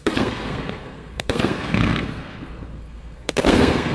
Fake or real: fake